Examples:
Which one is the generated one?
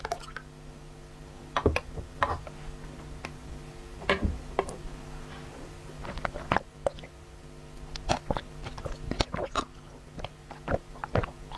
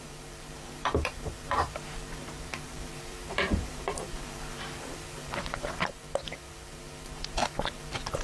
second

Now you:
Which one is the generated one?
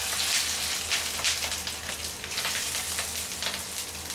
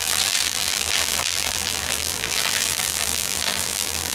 second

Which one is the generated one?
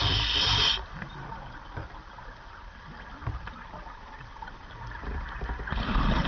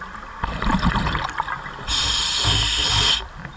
first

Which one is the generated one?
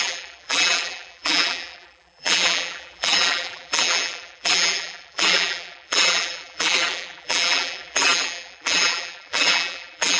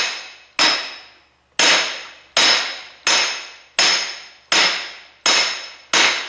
first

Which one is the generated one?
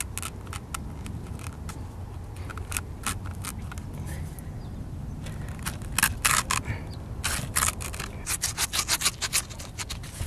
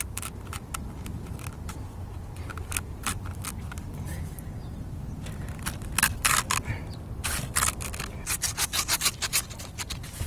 second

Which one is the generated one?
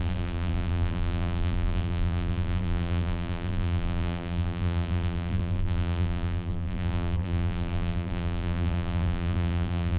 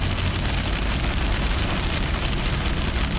first